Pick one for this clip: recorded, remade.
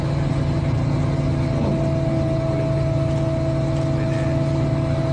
recorded